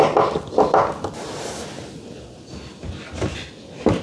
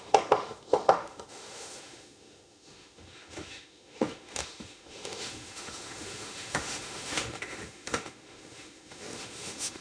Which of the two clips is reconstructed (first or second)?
second